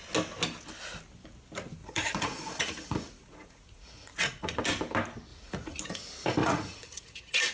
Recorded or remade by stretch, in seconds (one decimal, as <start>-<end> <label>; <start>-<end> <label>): 0.0-1.8 recorded; 1.8-4.6 remade; 4.6-5.3 recorded; 5.3-5.8 remade; 5.8-6.4 recorded; 6.4-7.5 remade